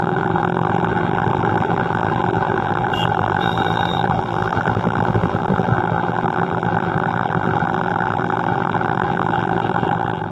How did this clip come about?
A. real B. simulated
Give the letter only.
B